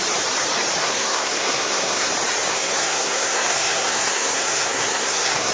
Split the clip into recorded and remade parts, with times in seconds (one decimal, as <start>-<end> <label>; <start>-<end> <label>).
0.0-0.8 recorded; 0.8-2.1 remade; 2.1-2.5 recorded; 2.5-5.5 remade

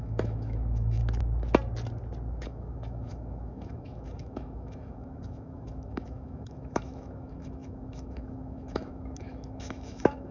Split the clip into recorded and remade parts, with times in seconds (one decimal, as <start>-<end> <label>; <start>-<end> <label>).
0.0-1.0 remade; 1.0-2.3 recorded; 2.3-10.3 remade

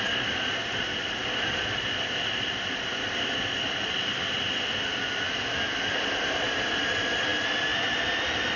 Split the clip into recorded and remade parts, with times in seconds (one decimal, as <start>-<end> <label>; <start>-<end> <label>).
0.0-8.6 recorded

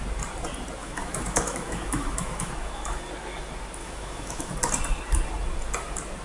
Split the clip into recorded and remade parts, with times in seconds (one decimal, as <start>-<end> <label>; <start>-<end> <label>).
0.0-0.8 recorded; 0.8-3.0 remade; 3.0-3.8 recorded; 3.8-4.5 remade; 4.5-6.2 recorded

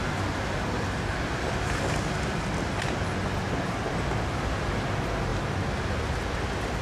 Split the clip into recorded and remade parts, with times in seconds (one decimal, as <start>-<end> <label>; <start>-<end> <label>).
0.0-6.8 recorded

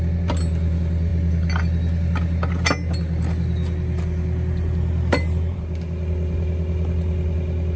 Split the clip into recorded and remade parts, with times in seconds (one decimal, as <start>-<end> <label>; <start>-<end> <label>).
0.0-7.8 recorded